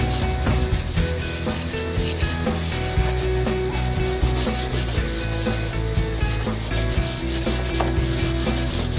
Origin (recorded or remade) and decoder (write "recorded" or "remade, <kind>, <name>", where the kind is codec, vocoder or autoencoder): recorded